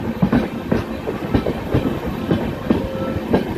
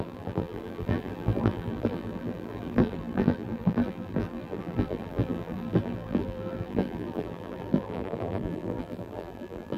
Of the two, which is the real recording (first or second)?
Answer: first